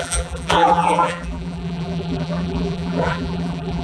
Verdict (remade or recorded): remade